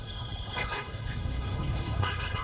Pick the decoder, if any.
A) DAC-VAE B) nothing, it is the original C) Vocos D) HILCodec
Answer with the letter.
D